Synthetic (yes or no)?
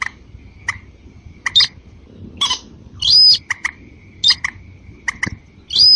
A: no